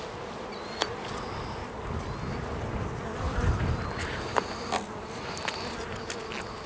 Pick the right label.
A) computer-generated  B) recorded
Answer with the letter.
B